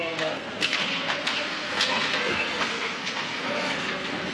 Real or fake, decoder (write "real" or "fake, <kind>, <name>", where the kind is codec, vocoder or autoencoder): fake, codec, SNAC